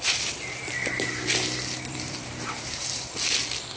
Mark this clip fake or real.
fake